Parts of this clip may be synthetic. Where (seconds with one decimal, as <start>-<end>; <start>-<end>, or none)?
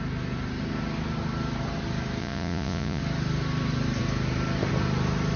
2.2-3.0